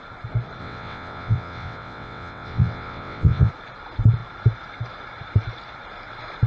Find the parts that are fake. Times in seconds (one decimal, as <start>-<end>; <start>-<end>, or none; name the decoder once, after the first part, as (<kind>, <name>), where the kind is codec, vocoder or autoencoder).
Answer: 0.6-3.5 (vocoder, WaveNeXt)